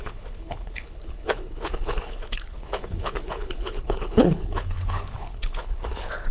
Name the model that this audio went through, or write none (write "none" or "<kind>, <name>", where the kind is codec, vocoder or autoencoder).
codec, HILCodec